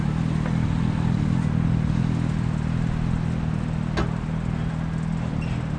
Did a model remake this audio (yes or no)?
no